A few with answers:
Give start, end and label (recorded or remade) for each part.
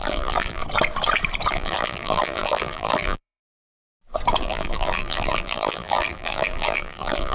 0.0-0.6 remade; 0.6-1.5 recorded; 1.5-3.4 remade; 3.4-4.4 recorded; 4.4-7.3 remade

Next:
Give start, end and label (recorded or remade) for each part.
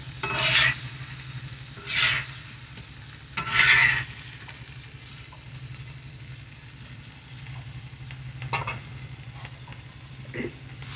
0.0-11.0 recorded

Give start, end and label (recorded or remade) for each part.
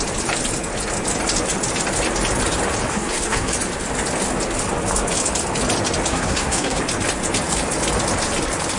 0.0-2.9 recorded; 2.9-3.5 remade; 3.5-6.1 recorded; 6.1-6.8 remade; 6.8-8.8 recorded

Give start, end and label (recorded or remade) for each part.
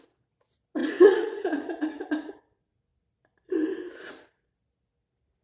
0.0-0.8 recorded; 0.8-2.3 remade; 2.3-5.4 recorded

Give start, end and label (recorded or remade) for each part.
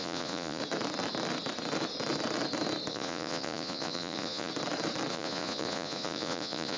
0.0-0.6 remade; 0.6-2.9 recorded; 2.9-4.5 remade; 4.5-5.1 recorded; 5.1-6.8 remade